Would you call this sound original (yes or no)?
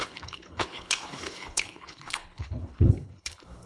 no